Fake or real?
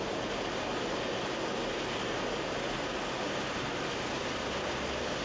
real